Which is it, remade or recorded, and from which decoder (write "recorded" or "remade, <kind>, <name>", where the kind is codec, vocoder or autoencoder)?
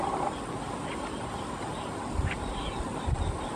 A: recorded